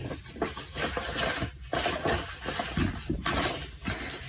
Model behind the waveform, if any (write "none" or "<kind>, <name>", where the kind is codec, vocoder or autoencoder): none